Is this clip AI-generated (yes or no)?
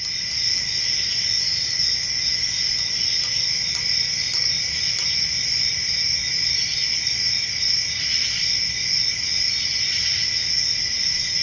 no